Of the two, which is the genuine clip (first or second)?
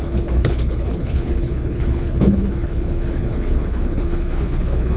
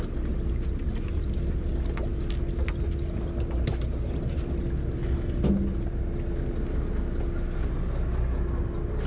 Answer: second